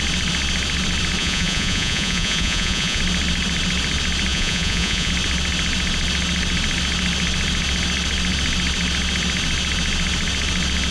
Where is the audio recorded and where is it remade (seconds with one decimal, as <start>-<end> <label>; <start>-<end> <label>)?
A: 0.0-1.2 recorded; 1.2-3.0 remade; 3.0-4.3 recorded; 4.3-5.1 remade; 5.1-10.9 recorded